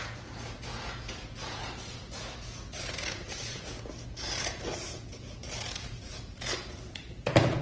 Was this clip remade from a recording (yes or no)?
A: yes